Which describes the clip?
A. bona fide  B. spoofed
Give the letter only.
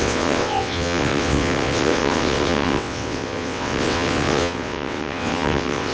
B